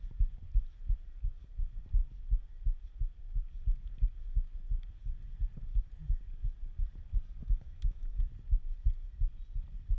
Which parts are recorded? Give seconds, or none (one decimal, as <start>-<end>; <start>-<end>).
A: 0.0-7.4; 8.3-10.0